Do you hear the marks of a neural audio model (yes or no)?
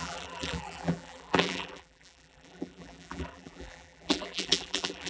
yes